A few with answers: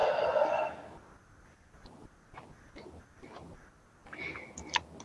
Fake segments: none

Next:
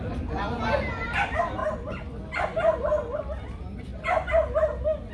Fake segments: none

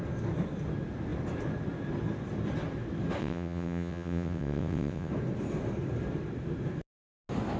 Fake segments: 3.2-5.1

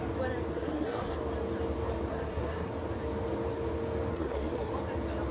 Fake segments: 0.5-1.2; 2.1-2.7; 4.1-4.7

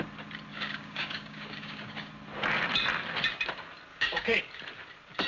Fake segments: 0.5-2.1; 3.9-4.4

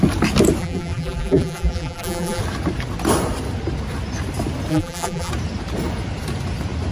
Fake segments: 0.6-2.4; 4.7-5.3

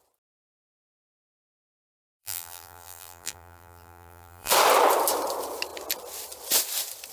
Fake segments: 2.2-4.5